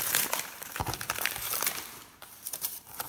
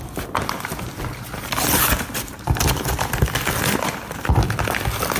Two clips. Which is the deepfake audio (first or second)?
first